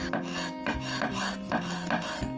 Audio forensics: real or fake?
real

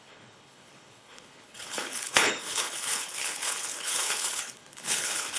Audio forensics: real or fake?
fake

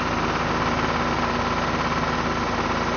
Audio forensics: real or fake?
real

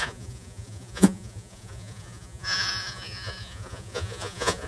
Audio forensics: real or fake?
fake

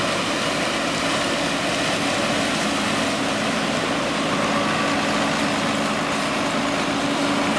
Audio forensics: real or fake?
real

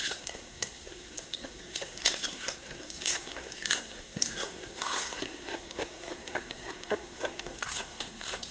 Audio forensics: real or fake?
fake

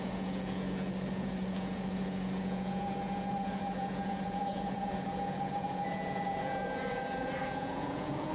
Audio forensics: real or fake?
fake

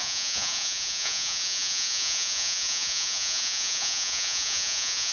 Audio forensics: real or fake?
fake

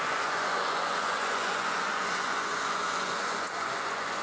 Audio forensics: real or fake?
fake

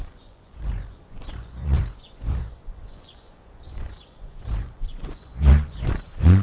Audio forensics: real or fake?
fake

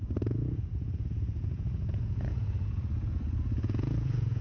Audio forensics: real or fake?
fake